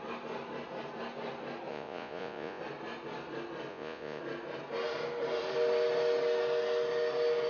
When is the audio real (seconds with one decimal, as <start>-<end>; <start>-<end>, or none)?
0.0-1.7; 2.6-3.7; 4.2-7.5